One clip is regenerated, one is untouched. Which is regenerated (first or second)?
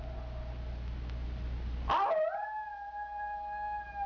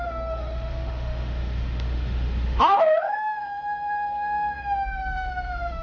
second